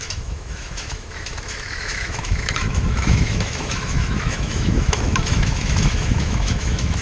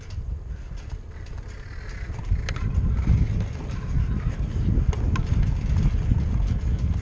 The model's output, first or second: first